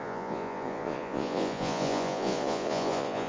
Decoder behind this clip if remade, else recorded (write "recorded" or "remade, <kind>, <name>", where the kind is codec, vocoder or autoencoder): remade, vocoder, Vocos